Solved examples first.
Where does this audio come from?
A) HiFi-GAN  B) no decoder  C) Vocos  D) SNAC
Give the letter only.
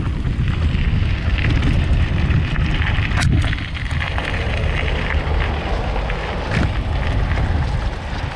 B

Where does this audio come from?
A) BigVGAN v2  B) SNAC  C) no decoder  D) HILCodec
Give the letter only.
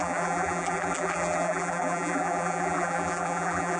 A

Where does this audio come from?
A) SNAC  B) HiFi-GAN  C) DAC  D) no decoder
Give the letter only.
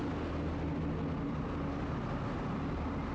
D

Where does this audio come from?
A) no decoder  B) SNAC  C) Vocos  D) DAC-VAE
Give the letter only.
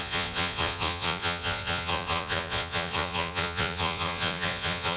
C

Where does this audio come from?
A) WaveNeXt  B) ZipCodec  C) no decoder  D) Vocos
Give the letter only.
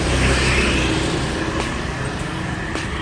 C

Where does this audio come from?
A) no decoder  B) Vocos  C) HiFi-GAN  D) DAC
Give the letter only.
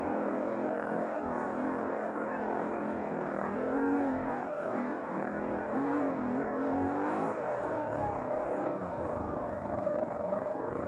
D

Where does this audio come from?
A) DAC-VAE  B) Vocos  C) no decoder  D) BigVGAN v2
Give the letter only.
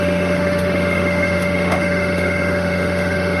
A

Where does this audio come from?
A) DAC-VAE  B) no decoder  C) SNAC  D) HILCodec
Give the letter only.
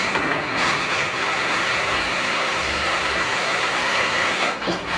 C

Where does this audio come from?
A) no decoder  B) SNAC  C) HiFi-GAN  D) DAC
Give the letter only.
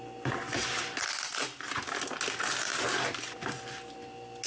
A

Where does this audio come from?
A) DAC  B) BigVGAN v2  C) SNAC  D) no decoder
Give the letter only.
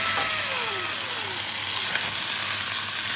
D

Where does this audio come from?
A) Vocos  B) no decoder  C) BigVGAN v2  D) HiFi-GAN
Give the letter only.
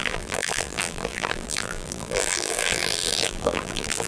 C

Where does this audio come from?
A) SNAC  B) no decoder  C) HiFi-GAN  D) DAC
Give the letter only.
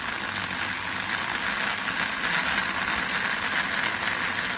B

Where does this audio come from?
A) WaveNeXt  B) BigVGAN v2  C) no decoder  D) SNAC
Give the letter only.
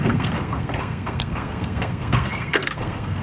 D